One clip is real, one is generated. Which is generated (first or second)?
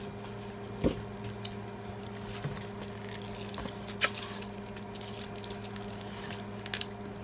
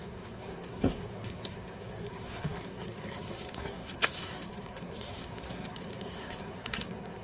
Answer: second